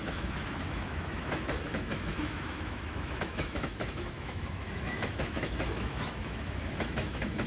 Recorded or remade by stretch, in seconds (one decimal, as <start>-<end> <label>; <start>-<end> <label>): 0.0-7.5 remade